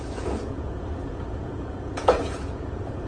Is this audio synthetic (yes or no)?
yes